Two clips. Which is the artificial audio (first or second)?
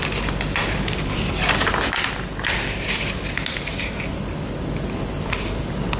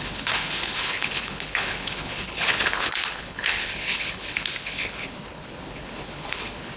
second